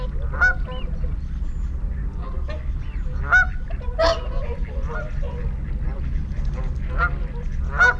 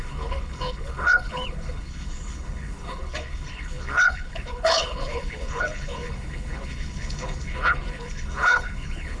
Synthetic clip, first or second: second